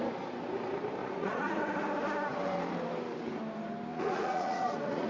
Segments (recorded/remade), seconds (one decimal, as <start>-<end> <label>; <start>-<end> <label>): 0.0-1.0 recorded; 1.0-1.6 remade; 1.6-3.9 recorded; 3.9-5.1 remade